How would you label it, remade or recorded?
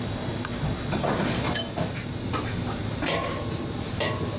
recorded